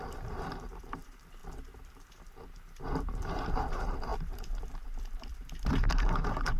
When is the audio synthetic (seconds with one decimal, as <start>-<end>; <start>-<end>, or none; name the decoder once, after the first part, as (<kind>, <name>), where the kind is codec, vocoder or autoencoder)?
0.0-1.4 (vocoder, BigVGAN v2); 1.9-6.6